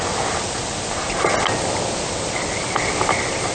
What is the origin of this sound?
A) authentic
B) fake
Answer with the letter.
A